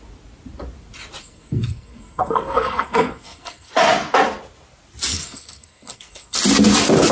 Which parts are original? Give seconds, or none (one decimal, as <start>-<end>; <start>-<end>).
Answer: 0.0-1.2; 3.7-5.1; 6.4-7.1

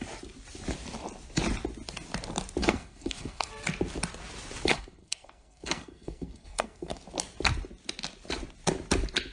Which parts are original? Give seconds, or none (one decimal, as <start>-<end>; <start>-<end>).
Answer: 0.0-2.6; 3.5-4.7; 7.0-9.3

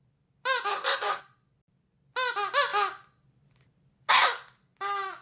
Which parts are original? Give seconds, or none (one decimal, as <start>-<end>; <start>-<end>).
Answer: 0.0-0.7; 1.2-5.2